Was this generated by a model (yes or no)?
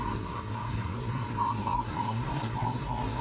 yes